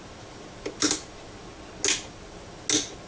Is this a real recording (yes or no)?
yes